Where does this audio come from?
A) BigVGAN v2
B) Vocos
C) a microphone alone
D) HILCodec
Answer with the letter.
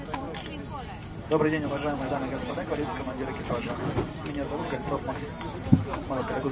C